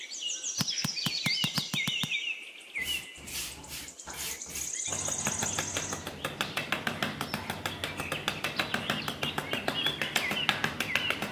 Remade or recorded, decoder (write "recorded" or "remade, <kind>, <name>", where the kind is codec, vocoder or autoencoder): recorded